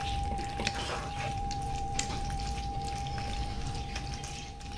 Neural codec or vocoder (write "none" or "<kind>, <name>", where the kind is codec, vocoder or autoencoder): vocoder, BigVGAN v2